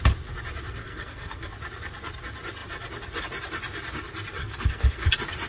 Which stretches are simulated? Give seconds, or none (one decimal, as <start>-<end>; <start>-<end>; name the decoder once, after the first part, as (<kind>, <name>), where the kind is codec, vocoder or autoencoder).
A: 0.8-1.5 (codec, SNAC); 4.4-5.1